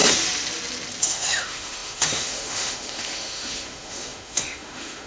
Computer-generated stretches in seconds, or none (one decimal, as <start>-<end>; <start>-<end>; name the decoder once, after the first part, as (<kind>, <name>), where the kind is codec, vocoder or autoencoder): 1.0-5.1 (autoencoder, DAC-VAE)